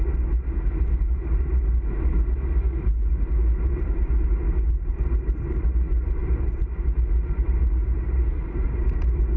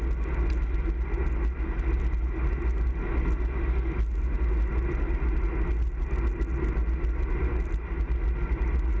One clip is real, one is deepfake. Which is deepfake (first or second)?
first